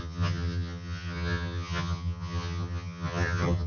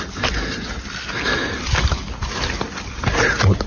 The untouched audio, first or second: second